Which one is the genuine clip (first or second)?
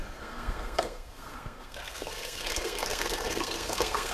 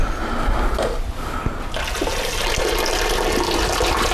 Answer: second